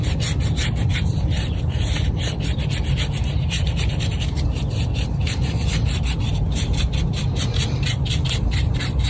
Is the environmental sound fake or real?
fake